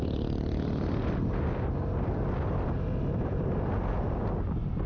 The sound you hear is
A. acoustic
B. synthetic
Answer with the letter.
A